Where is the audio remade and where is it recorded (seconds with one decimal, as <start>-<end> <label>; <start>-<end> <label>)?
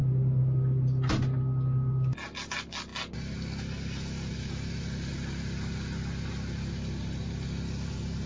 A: 0.0-8.3 recorded